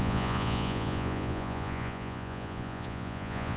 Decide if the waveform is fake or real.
fake